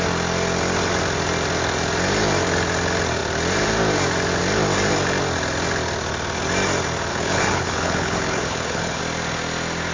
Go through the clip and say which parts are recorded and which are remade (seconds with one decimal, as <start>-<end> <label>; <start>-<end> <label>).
0.0-7.1 recorded; 7.1-9.0 remade; 9.0-9.9 recorded